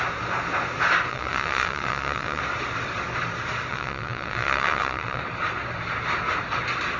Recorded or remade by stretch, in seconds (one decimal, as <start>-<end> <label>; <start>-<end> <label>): 0.0-1.1 recorded; 1.1-2.4 remade; 2.4-3.7 recorded; 3.7-5.2 remade; 5.2-7.0 recorded